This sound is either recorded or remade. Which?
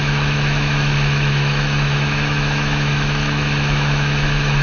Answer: remade